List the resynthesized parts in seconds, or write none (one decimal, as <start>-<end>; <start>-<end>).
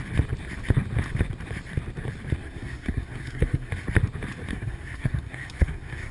2.4-3.7; 4.5-6.1